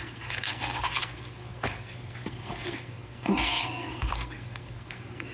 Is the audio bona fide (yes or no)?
no